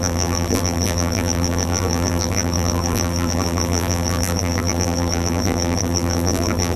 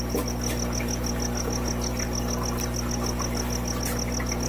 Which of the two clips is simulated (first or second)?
first